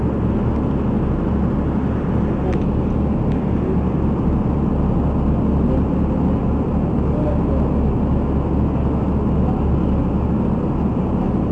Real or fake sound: real